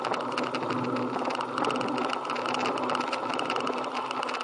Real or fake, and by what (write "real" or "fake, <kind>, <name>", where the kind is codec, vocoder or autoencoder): real